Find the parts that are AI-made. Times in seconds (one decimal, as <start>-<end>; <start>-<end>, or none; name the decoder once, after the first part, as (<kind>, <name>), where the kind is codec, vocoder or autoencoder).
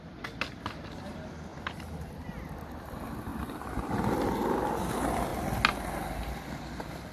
1.5-2.0 (vocoder, BigVGAN v2); 3.3-3.9